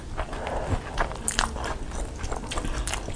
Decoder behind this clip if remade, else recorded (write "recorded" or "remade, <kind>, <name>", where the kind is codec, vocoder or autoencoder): recorded